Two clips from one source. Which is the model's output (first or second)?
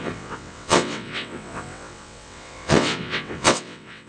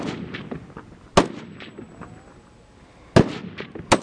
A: first